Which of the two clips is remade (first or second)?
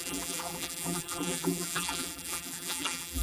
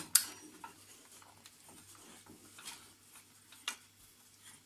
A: first